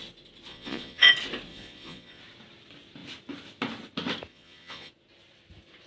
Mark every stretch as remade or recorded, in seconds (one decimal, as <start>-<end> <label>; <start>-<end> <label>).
0.0-0.5 recorded; 0.5-1.1 remade; 1.1-1.5 recorded; 1.5-2.2 remade; 2.2-4.3 recorded; 4.3-4.9 remade; 4.9-5.9 recorded